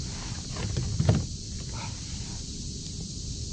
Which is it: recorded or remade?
recorded